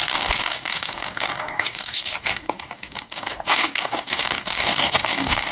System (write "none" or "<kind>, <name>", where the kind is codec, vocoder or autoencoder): codec, DAC